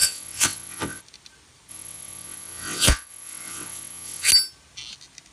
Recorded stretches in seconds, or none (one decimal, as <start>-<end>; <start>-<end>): 1.0-1.7; 4.3-5.3